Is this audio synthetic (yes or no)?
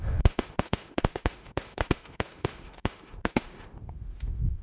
yes